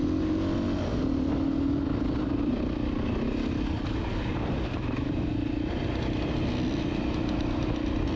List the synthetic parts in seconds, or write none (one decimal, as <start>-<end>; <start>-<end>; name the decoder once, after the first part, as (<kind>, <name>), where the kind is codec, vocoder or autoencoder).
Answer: none